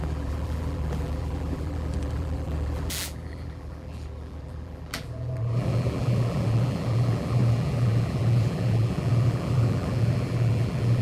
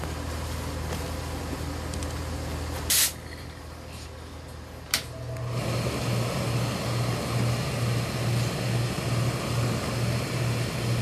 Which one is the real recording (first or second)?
second